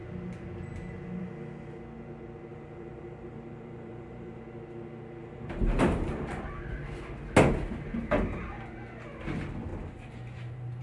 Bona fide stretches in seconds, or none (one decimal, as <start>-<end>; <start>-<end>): 0.0-2.5; 4.4-5.2; 6.4-9.7